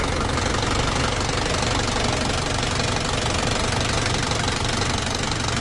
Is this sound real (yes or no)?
yes